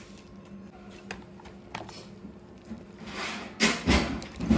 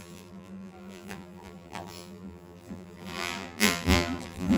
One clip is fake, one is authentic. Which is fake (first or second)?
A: second